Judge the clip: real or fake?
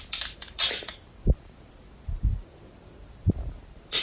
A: real